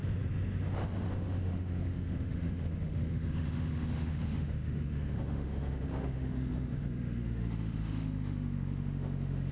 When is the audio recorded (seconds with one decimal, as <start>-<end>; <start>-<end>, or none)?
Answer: 0.0-1.1